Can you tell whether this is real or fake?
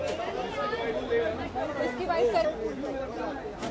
real